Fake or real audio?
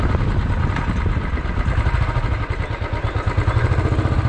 real